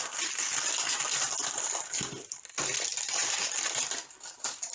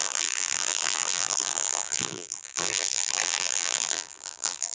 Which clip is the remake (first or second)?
second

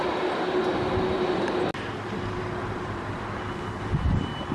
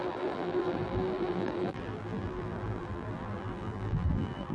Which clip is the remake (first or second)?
second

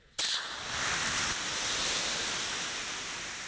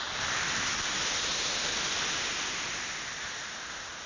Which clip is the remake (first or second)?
first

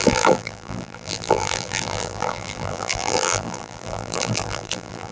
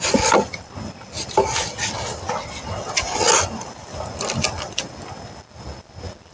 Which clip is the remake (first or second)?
first